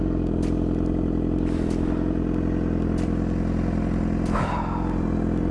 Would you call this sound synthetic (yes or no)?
no